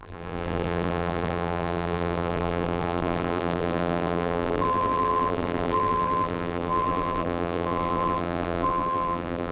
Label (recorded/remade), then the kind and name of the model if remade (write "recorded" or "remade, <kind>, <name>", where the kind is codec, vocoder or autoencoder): remade, vocoder, BigVGAN v2